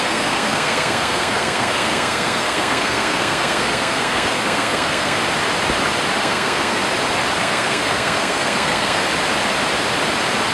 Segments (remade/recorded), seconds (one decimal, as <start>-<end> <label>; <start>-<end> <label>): 0.0-5.2 remade; 5.2-6.2 recorded; 6.2-6.8 remade; 6.8-7.4 recorded; 7.4-9.0 remade; 9.0-10.5 recorded